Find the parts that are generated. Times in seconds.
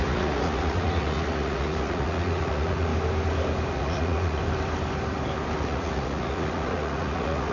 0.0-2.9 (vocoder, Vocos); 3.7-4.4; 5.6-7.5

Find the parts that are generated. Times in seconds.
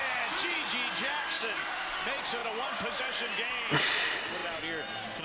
2.4-3.0 (vocoder, BigVGAN v2)